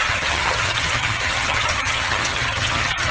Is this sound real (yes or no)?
no